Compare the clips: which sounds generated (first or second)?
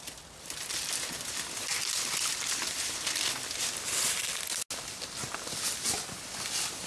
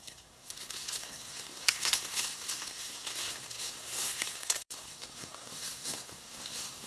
second